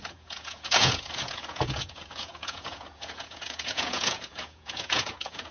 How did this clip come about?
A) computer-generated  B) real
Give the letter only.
A